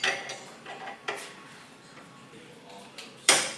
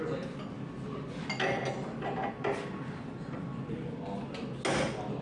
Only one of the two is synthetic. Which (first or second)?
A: first